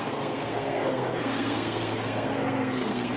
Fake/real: fake